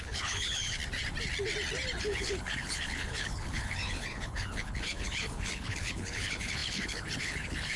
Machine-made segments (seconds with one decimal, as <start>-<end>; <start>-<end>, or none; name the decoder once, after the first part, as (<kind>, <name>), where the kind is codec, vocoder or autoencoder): 0.0-0.8 (codec, HILCodec); 2.0-7.8